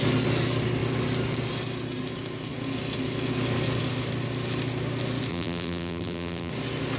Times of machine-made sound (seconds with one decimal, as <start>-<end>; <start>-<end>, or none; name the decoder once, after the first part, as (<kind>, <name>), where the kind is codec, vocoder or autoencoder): 5.3-6.5 (vocoder, BigVGAN v2)